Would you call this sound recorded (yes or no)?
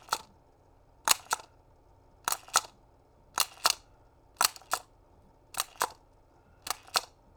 yes